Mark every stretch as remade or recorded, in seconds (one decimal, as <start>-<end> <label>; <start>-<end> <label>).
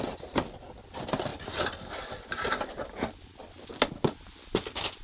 0.0-5.0 recorded